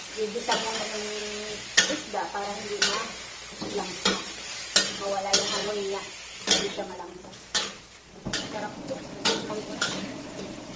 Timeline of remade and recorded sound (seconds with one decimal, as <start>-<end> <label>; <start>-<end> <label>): 0.0-1.2 remade; 1.2-3.8 recorded; 3.8-10.8 remade